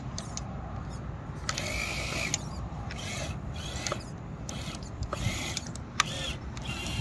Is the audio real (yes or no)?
yes